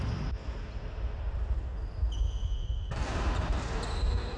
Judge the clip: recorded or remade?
recorded